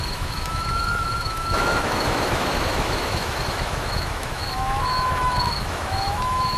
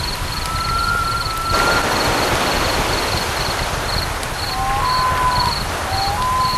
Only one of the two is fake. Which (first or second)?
first